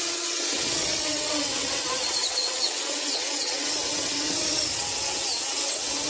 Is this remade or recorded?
remade